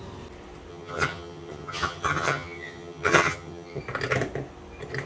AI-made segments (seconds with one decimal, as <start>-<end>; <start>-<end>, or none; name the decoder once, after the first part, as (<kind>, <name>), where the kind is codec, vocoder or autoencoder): 0.7-3.8 (vocoder, HiFi-GAN)